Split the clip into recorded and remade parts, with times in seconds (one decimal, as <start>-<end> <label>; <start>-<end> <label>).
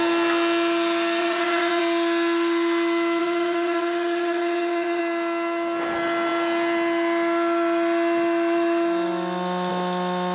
0.0-1.2 recorded; 1.2-1.8 remade; 1.8-3.2 recorded; 3.2-5.0 remade; 5.0-10.3 recorded